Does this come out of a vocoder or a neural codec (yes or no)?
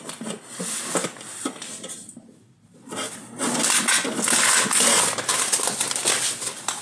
no